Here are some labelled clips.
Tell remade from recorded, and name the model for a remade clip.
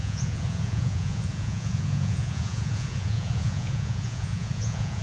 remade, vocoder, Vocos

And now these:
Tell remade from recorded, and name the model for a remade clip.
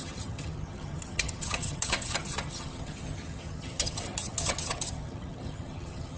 remade, vocoder, HiFi-GAN